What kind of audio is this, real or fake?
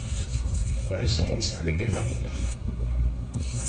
fake